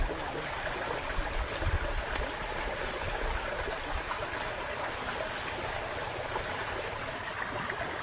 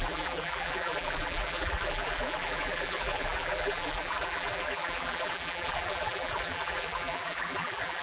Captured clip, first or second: first